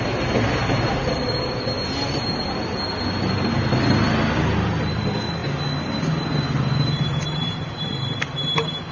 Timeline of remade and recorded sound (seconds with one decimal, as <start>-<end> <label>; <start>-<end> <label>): 0.0-8.9 recorded